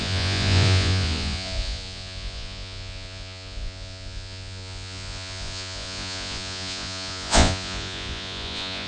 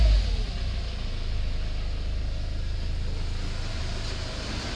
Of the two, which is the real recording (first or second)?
second